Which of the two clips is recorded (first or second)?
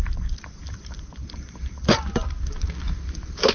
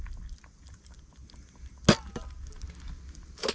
second